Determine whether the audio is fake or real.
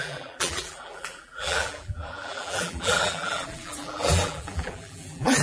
fake